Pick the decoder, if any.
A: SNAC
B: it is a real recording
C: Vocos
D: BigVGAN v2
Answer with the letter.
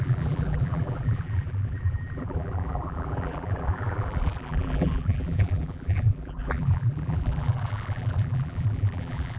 D